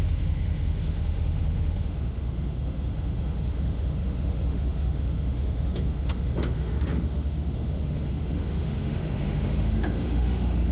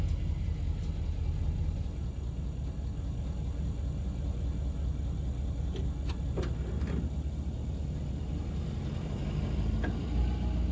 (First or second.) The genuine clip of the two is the second